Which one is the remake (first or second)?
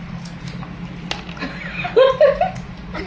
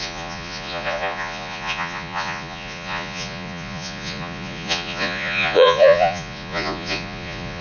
second